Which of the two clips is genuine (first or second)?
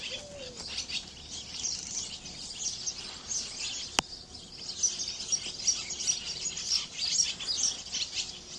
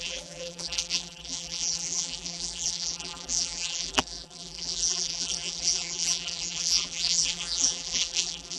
first